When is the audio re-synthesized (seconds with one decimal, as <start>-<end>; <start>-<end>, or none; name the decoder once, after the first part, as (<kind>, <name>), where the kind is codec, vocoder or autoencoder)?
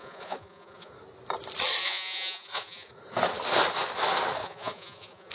0.0-0.9 (vocoder, Vocos); 1.8-2.9; 4.4-5.3